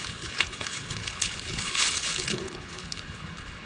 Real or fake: fake